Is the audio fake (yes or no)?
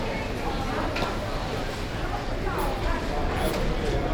yes